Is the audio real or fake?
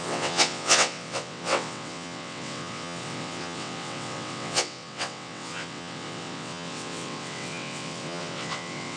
fake